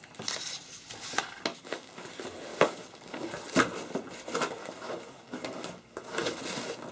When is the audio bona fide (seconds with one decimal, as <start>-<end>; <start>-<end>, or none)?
0.0-1.5; 2.1-2.5; 3.3-4.6; 6.4-6.9